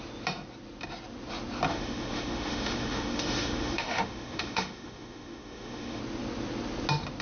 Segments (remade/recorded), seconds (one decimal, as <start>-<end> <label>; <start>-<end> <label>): 0.0-1.7 recorded; 1.7-6.0 remade; 6.0-7.2 recorded